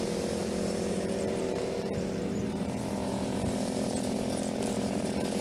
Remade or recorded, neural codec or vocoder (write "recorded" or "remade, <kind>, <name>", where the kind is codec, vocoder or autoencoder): remade, vocoder, BigVGAN v2